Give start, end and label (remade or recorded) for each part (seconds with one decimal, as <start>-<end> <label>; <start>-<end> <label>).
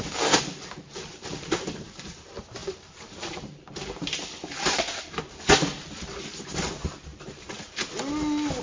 0.0-1.1 recorded; 1.1-1.9 remade; 1.9-2.6 recorded; 2.6-5.2 remade; 5.2-7.1 recorded; 7.1-7.8 remade; 7.8-8.6 recorded